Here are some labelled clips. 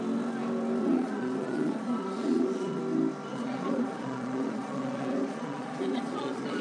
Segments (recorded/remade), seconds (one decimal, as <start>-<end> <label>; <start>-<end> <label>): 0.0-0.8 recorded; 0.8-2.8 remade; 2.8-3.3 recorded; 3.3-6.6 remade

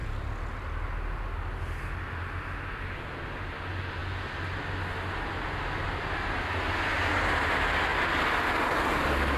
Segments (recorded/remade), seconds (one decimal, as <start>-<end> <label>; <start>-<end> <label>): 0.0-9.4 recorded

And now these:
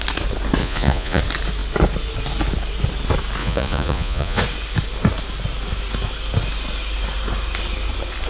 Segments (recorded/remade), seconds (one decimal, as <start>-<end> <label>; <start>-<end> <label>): 0.0-0.6 recorded; 0.6-1.2 remade; 1.2-3.4 recorded; 3.4-4.4 remade; 4.4-8.3 recorded